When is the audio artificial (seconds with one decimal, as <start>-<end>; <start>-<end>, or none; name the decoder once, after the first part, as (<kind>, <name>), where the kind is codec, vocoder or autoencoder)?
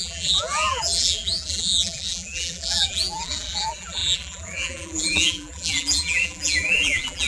0.0-7.3 (vocoder, BigVGAN v2)